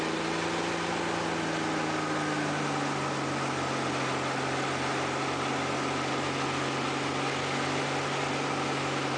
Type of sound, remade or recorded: recorded